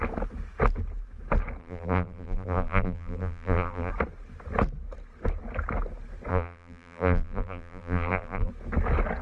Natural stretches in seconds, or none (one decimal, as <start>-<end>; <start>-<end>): 0.0-1.6; 3.9-6.3; 8.5-9.2